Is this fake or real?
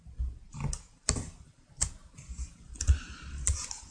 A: real